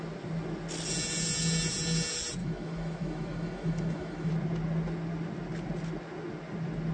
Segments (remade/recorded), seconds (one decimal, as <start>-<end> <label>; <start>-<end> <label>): 0.0-2.4 recorded; 2.4-4.3 remade; 4.3-6.9 recorded